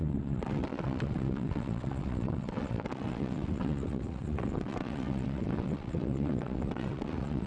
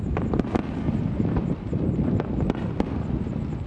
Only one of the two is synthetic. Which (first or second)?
first